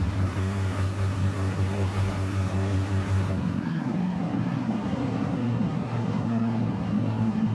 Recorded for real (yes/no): no